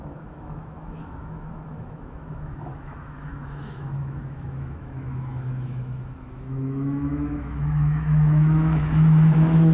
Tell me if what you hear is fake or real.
fake